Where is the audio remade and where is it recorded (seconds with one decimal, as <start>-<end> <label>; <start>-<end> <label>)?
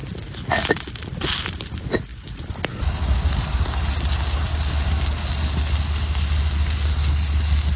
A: 0.0-7.8 recorded